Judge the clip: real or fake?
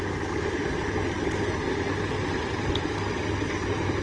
real